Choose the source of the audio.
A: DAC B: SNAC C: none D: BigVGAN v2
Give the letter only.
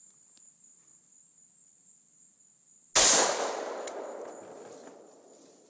C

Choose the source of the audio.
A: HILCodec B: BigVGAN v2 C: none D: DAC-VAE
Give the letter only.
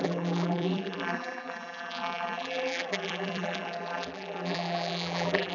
B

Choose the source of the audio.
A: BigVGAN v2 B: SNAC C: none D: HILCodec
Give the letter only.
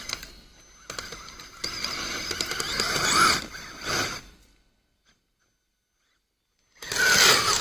C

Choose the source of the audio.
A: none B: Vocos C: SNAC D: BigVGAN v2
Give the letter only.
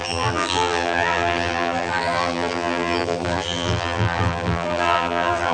D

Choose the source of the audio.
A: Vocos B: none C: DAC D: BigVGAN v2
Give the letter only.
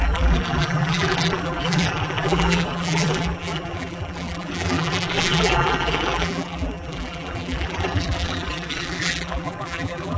D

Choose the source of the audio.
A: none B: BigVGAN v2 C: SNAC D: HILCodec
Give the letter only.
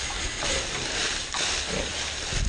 A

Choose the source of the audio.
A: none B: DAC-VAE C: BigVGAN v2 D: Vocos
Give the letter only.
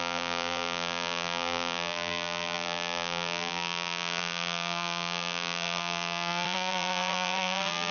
C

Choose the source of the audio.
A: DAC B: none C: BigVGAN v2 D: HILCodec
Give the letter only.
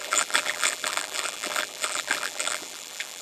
C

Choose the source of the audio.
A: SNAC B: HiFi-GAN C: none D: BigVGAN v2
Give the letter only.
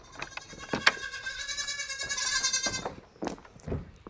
C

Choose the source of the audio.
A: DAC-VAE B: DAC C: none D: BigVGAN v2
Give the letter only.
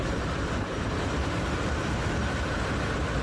D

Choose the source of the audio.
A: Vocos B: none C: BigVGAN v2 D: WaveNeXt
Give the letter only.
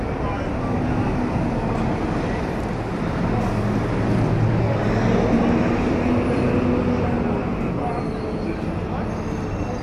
B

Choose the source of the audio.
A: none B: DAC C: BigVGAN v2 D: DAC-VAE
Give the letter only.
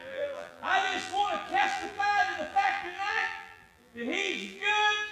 C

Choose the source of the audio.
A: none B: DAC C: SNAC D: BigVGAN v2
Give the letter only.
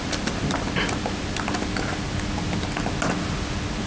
A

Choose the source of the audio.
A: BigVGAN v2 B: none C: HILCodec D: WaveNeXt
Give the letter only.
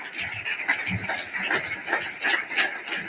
B